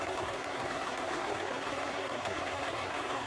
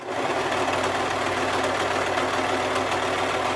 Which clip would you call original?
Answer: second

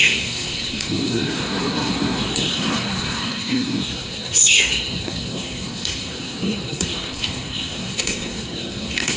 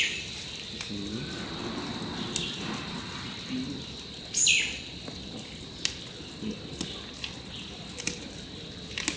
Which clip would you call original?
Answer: second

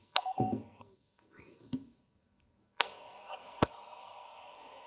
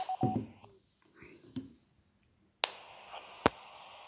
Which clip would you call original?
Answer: second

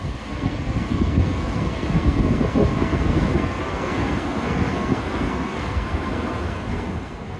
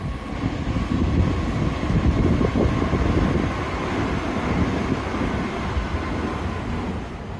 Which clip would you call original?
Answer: second